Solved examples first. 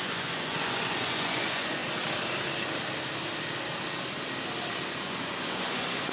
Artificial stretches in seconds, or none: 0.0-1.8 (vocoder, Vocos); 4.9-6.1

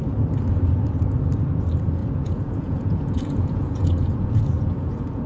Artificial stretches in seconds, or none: 2.0-5.3 (vocoder, Vocos)

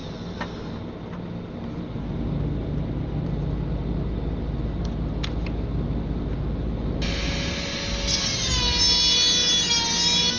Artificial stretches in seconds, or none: none

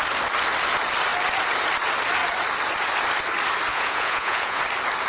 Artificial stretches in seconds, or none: 3.7-4.6 (vocoder, Vocos)